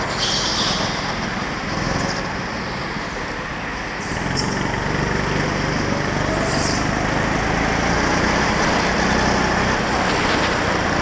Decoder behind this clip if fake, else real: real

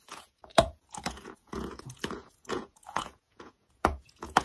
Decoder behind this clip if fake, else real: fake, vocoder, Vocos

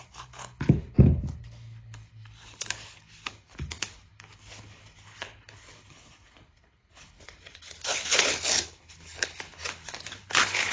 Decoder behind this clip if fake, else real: fake, codec, HILCodec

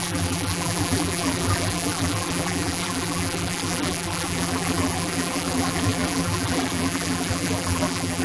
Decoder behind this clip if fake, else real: fake, vocoder, BigVGAN v2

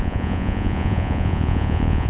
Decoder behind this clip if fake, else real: fake, vocoder, Vocos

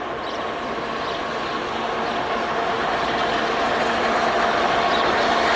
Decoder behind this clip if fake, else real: real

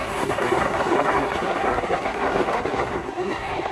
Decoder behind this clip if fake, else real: fake, codec, SNAC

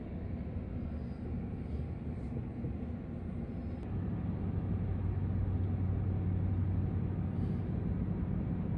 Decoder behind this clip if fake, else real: real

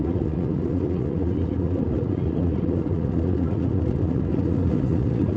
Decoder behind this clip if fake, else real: fake, vocoder, Vocos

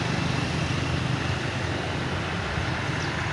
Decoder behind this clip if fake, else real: real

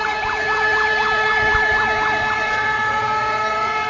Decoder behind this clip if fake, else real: fake, vocoder, WaveNeXt